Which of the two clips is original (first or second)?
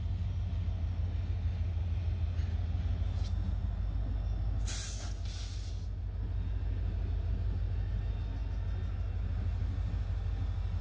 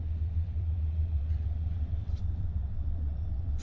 first